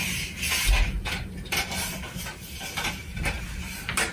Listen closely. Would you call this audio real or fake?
real